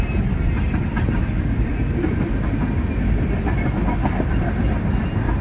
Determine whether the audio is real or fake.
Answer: real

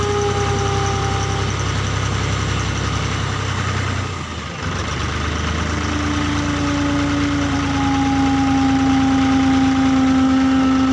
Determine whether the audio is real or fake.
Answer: real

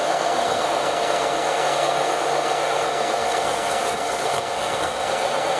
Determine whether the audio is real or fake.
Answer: fake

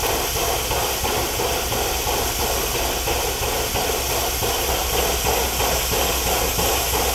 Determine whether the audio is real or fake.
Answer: real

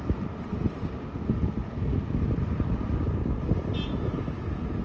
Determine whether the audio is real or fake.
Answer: real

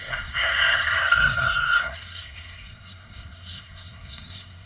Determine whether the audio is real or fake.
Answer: fake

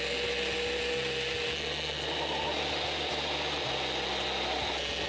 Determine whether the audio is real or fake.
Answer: real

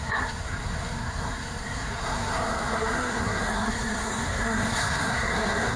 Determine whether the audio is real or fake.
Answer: fake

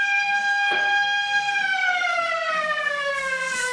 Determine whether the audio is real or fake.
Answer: fake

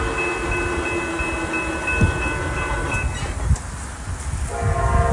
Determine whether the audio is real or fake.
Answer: real